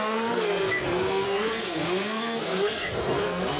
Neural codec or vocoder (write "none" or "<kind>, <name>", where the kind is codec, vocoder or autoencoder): codec, SNAC